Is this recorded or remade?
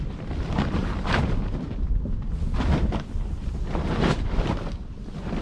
remade